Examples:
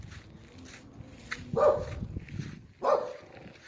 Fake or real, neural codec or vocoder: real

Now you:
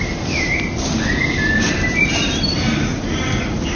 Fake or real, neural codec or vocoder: fake, vocoder, BigVGAN v2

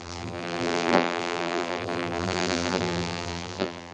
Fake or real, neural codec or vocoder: fake, vocoder, BigVGAN v2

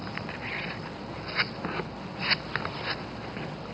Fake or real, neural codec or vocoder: real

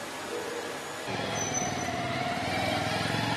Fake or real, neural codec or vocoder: real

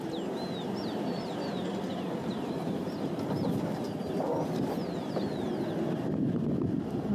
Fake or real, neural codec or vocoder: fake, vocoder, BigVGAN v2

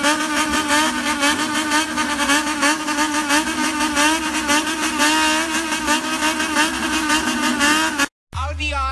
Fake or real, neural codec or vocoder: real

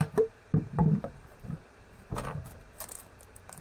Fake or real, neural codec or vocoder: fake, vocoder, BigVGAN v2